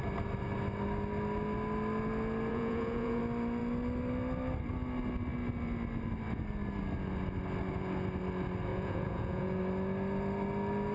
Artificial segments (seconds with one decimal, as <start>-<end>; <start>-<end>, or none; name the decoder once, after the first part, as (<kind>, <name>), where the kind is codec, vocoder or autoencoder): 2.5-3.2 (vocoder, Vocos); 8.7-9.6